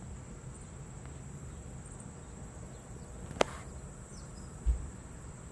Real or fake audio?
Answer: fake